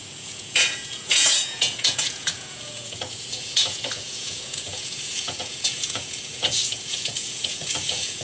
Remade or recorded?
remade